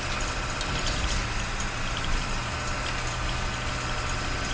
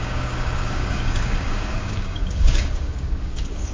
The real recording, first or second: first